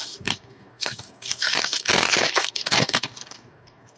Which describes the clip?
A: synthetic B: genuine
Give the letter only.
A